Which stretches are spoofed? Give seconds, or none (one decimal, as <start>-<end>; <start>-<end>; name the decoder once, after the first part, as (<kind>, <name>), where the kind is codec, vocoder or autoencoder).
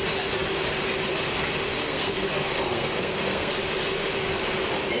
1.8-3.5 (codec, SNAC)